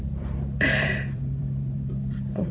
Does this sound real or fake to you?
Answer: fake